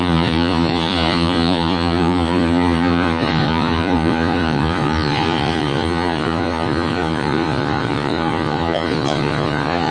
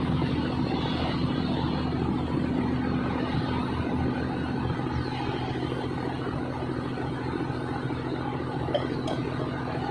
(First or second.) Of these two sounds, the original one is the second